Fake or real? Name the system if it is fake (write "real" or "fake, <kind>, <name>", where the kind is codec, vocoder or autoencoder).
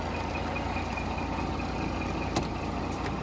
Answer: real